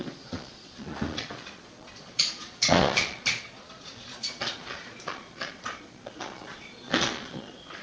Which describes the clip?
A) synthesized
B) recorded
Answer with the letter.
A